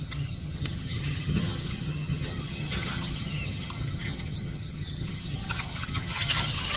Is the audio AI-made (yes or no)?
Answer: yes